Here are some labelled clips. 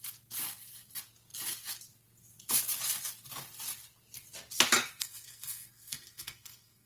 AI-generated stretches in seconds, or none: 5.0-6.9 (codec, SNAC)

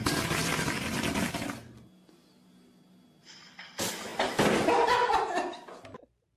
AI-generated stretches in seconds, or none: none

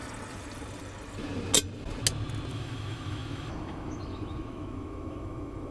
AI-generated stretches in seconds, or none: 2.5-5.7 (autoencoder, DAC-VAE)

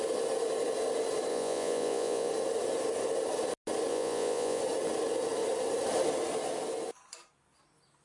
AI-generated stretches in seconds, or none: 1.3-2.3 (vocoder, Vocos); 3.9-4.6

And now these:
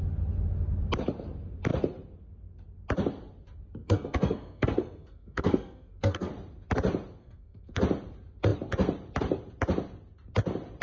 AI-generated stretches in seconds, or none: 3.8-6.3 (codec, SNAC); 7.2-7.8

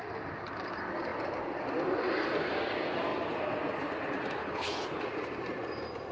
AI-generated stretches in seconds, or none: 4.4-5.0 (codec, HILCodec)

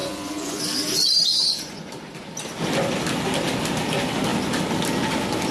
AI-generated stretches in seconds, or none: 0.0-0.6 (vocoder, Vocos); 1.3-1.9